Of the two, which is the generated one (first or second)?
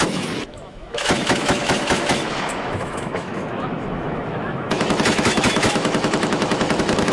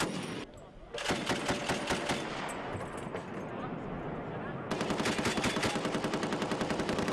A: first